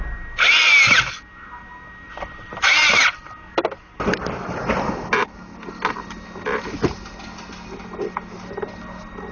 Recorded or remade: recorded